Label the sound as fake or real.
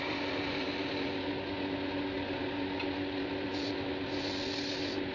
real